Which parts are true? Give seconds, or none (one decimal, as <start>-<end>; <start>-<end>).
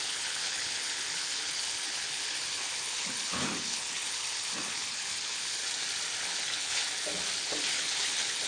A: 5.6-6.2; 6.8-7.4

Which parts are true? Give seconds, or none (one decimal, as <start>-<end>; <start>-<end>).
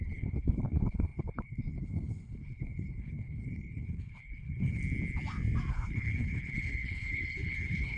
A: 4.8-5.7